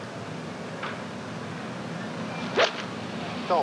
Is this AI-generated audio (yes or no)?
no